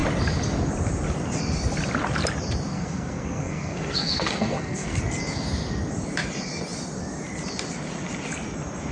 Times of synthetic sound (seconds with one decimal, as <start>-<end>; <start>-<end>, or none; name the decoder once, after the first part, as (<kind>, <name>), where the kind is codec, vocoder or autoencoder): 2.7-5.0 (codec, SNAC)